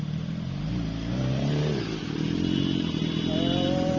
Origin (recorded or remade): recorded